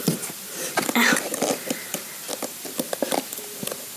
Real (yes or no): no